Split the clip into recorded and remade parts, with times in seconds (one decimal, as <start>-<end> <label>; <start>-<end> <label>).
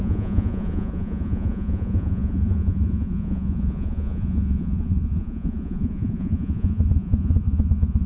0.0-8.1 remade